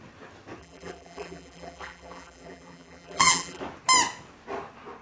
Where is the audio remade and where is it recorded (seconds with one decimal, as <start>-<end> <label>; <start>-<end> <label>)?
0.0-0.6 recorded; 0.6-3.6 remade; 3.6-5.0 recorded